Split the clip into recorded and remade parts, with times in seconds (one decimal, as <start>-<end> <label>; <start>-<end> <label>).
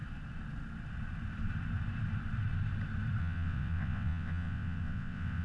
0.0-3.2 recorded; 3.2-5.4 remade